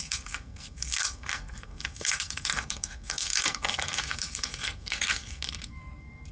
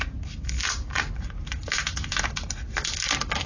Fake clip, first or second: first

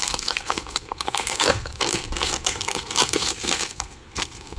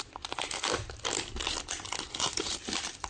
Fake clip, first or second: first